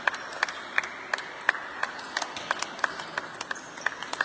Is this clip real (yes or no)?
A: yes